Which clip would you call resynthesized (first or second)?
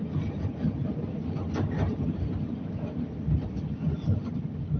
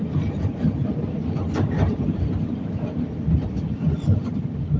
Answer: second